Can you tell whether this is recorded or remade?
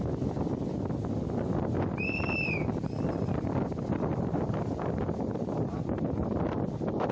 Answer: recorded